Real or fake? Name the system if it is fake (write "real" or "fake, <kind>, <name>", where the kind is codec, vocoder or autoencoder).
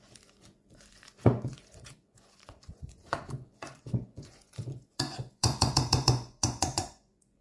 fake, vocoder, Vocos